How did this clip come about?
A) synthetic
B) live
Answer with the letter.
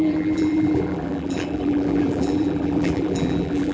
A